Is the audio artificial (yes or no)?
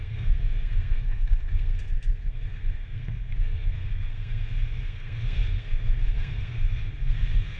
yes